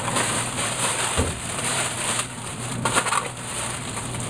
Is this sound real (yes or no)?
no